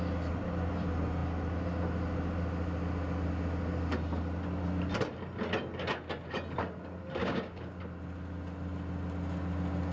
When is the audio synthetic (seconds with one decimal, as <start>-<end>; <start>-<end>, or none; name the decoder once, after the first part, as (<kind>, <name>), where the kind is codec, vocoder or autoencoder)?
7.2-7.8 (codec, DAC)